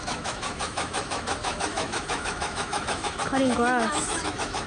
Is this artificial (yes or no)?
yes